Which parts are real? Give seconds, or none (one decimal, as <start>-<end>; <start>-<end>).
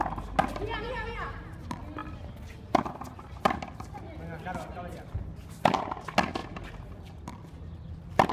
0.0-4.7; 6.0-6.4